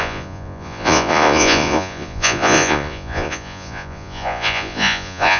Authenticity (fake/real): fake